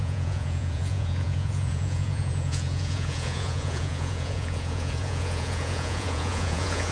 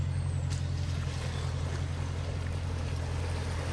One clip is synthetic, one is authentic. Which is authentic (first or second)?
second